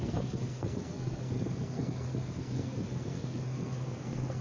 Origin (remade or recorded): remade